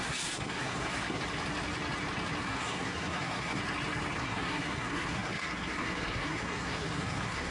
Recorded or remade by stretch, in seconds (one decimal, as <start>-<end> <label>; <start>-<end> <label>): 0.0-1.2 remade; 1.2-2.4 recorded; 2.4-3.6 remade; 3.6-4.2 recorded; 4.2-7.5 remade